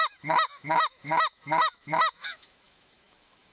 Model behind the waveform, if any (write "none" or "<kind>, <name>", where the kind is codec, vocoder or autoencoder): autoencoder, DAC-VAE